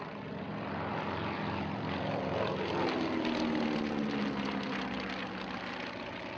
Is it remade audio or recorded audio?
recorded